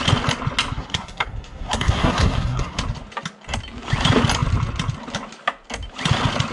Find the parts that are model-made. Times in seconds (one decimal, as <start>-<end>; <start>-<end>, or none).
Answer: 0.7-2.8